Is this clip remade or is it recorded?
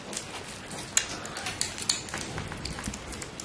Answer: recorded